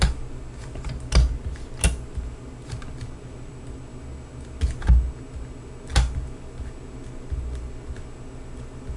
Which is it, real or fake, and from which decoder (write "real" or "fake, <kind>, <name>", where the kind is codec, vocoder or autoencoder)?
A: real